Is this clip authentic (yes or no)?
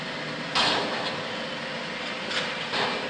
yes